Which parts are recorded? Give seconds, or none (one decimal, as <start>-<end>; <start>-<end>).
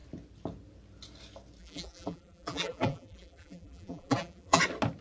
0.0-1.6; 4.6-5.0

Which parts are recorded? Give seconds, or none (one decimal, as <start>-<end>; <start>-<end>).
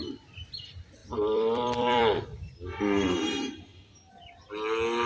0.0-1.0; 4.1-5.1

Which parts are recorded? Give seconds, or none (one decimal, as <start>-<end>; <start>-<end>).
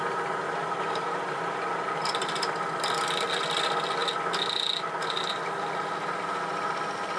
0.0-0.6; 1.4-7.2